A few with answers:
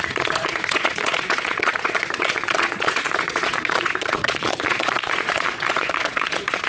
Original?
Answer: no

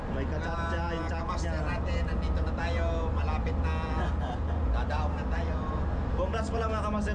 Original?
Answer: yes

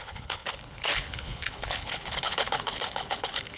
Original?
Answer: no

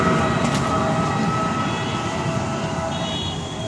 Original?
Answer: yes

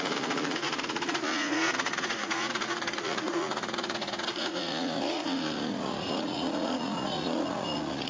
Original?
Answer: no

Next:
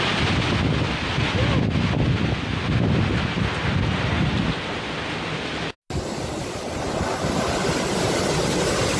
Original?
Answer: yes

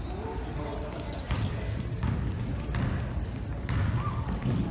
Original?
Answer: yes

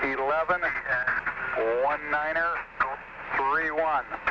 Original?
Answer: yes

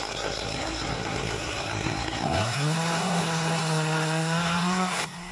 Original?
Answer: no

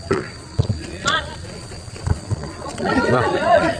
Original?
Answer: no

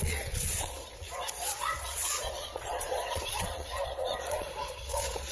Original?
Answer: no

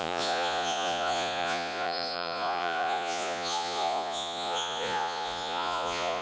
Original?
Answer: no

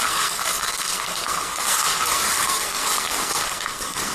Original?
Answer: no